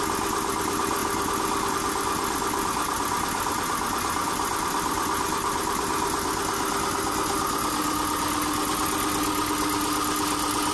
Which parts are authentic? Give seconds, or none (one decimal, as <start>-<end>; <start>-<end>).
0.0-10.7

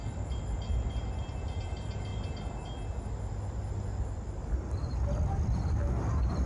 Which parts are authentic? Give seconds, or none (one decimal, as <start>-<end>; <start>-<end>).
0.0-0.9; 2.1-6.0

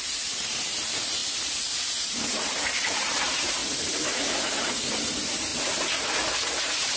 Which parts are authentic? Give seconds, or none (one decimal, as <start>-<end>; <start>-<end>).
1.2-1.9; 3.6-4.4; 5.5-6.6

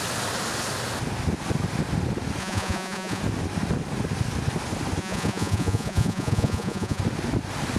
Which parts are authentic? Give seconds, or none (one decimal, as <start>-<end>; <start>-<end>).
0.0-2.4; 3.2-5.0; 7.0-7.8

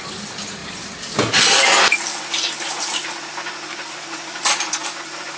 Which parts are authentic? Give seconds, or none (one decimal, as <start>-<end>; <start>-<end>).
0.0-5.4

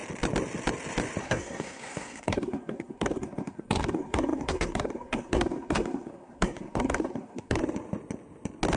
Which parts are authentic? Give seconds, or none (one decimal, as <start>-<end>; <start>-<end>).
0.0-1.2; 7.6-8.8

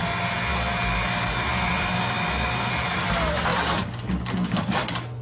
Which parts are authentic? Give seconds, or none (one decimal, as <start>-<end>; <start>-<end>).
0.0-5.2

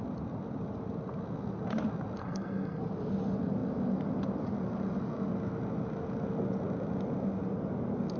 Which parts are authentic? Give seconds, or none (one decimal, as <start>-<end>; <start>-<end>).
0.0-2.2; 2.8-8.2